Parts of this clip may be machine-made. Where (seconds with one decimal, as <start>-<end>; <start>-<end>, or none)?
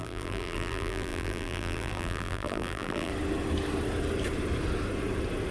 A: 0.0-3.1